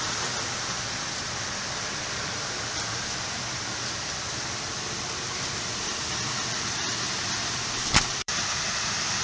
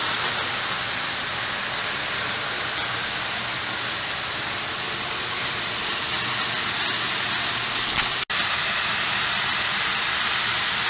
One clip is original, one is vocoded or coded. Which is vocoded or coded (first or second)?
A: first